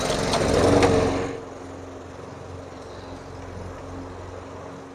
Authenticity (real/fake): real